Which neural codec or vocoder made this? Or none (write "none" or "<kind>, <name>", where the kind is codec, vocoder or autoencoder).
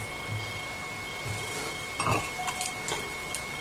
none